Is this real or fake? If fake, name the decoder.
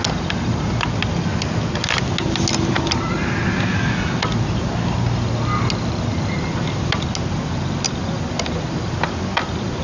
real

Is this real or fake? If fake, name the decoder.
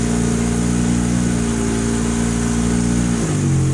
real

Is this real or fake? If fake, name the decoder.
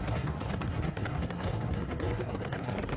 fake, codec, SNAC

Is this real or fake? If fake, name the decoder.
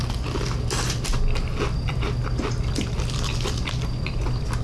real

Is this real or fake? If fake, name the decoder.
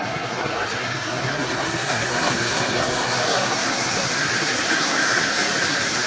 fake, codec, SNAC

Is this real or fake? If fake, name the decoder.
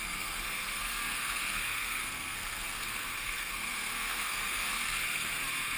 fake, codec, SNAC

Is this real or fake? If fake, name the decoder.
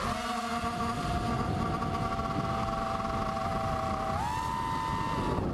real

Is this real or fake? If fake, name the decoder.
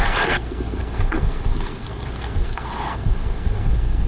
fake, codec, SNAC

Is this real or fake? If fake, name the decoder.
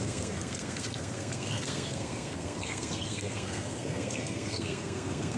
fake, codec, SNAC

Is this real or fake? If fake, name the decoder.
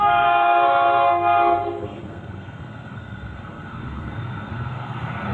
fake, codec, SNAC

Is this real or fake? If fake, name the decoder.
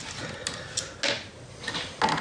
real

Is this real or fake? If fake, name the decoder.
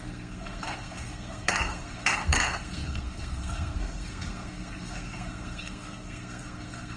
fake, codec, SNAC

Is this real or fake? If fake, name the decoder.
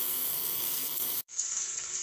fake, codec, SNAC